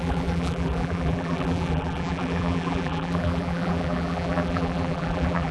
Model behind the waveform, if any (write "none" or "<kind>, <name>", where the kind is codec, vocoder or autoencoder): vocoder, BigVGAN v2